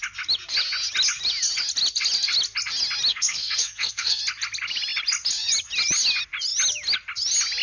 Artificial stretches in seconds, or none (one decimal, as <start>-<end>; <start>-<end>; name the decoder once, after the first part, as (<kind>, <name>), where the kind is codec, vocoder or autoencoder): 3.1-4.2 (codec, SNAC)